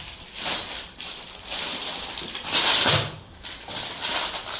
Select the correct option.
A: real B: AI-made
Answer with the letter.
B